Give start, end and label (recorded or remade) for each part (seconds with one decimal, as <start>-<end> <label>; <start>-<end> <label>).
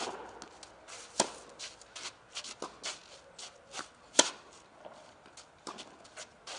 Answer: 0.0-6.6 recorded